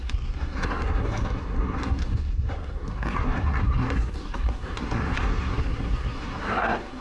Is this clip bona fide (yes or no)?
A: no